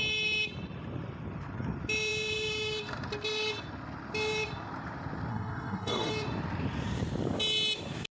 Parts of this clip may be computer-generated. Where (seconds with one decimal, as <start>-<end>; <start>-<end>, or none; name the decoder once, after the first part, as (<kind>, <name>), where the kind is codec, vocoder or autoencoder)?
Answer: 5.3-6.1 (codec, SNAC)